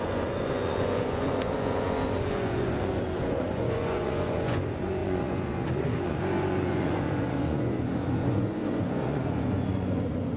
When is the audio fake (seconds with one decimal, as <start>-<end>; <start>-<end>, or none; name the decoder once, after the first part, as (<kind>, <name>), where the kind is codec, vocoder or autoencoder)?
0.0-10.4 (vocoder, Vocos)